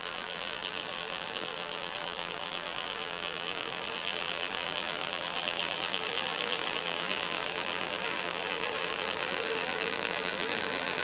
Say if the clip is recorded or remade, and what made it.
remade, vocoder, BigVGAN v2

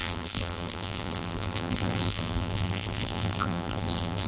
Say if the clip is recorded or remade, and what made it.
remade, vocoder, BigVGAN v2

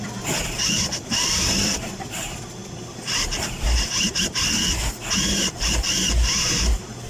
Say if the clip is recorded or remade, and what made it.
remade, vocoder, BigVGAN v2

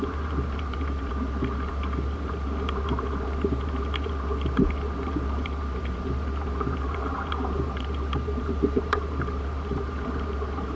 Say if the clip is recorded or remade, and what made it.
remade, vocoder, BigVGAN v2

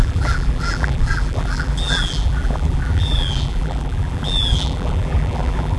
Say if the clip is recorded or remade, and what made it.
remade, vocoder, BigVGAN v2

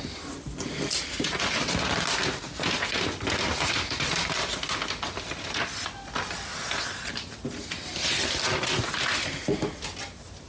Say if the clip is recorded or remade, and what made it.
recorded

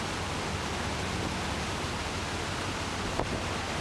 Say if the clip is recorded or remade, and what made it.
recorded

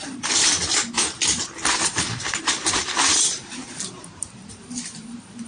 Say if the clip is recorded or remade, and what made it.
remade, vocoder, BigVGAN v2